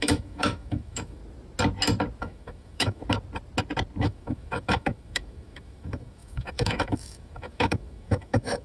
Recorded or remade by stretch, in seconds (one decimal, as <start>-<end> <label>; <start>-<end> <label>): 0.0-1.2 remade; 1.2-2.2 recorded; 2.2-3.0 remade; 3.0-4.0 recorded; 4.0-8.6 remade